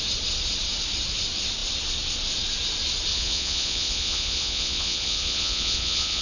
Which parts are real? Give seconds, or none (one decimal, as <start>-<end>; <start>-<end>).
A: 0.0-3.1